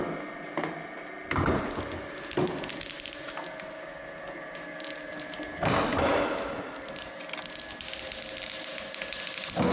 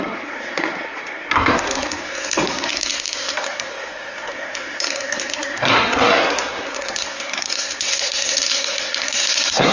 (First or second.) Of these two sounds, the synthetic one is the second